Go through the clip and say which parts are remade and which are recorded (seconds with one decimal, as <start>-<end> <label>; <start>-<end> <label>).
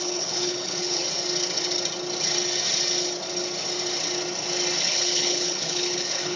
0.0-1.0 remade; 1.0-4.8 recorded; 4.8-6.4 remade